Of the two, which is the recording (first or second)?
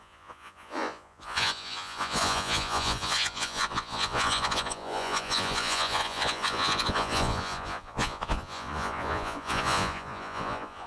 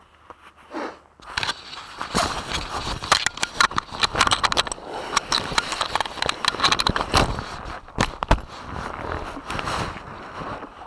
second